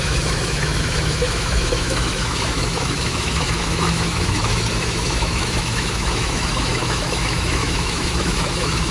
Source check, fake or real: fake